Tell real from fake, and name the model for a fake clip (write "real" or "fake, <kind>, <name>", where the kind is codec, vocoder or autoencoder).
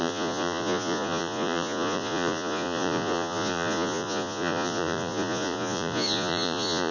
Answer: fake, vocoder, Vocos